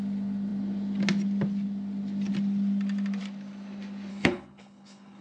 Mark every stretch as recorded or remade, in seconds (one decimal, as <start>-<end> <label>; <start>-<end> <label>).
0.0-4.1 recorded; 4.1-5.2 remade